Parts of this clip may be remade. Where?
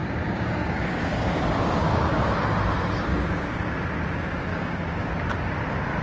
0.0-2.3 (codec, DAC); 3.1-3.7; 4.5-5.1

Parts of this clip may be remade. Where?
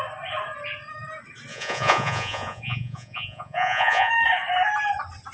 1.5-4.1 (vocoder, Vocos)